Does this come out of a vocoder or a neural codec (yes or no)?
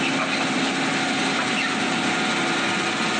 no